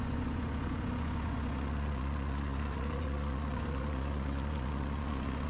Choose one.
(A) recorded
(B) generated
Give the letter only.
B